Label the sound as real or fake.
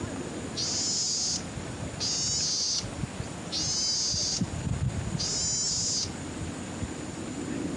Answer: real